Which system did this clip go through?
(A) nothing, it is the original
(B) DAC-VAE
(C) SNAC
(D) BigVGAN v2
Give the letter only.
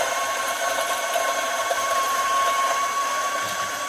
D